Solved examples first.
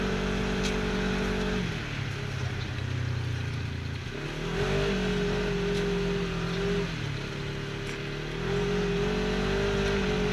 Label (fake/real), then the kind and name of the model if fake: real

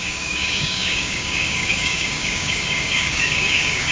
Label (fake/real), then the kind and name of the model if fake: fake, codec, DAC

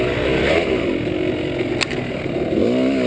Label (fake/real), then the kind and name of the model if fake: real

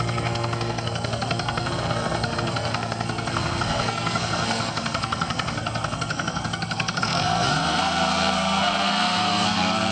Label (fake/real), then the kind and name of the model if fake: fake, codec, SNAC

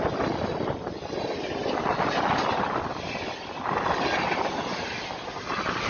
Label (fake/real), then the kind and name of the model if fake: fake, vocoder, BigVGAN v2